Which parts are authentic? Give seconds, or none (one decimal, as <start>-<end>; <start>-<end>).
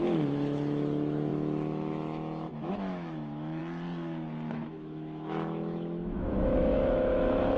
3.6-4.5